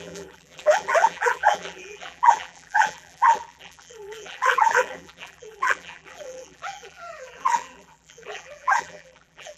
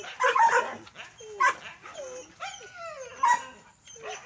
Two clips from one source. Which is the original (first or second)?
second